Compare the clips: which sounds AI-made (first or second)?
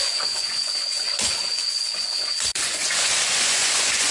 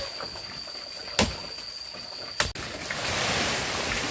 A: first